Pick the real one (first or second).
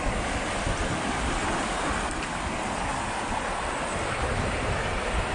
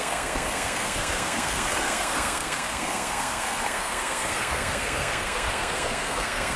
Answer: first